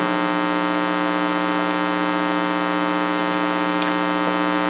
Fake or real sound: real